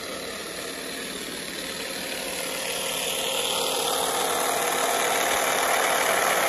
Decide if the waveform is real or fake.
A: real